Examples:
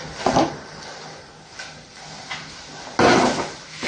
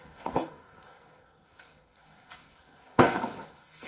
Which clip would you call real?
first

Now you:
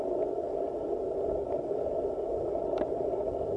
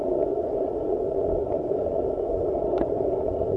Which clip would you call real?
first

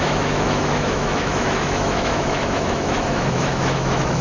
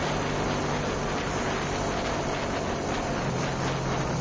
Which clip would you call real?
second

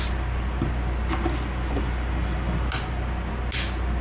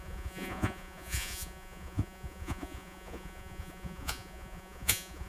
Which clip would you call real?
first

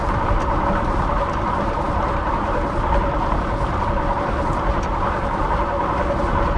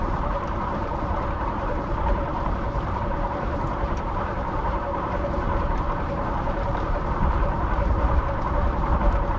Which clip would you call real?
first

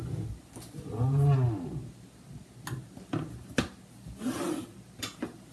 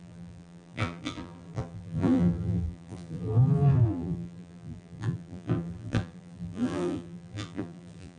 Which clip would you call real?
first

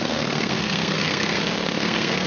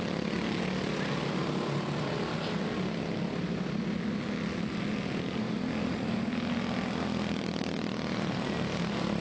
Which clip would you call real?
second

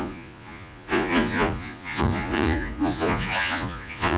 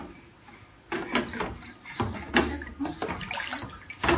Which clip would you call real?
second